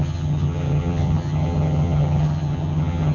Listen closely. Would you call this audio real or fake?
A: fake